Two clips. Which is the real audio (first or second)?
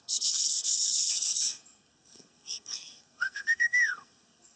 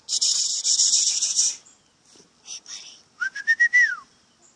second